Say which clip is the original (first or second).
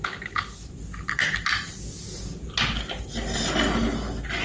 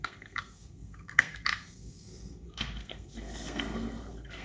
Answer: first